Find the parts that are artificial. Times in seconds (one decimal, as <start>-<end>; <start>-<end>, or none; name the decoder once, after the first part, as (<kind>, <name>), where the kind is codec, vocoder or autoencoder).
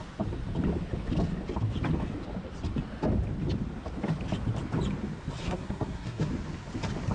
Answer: 5.4-6.3 (codec, SNAC)